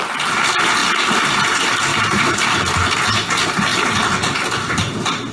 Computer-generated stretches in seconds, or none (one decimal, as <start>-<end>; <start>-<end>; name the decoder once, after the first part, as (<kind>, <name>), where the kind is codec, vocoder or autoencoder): 1.9-2.4 (vocoder, BigVGAN v2)